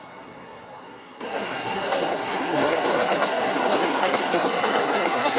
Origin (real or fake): fake